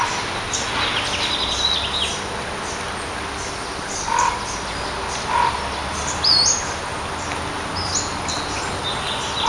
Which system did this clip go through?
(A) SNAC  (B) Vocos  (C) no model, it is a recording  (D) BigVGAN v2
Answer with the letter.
C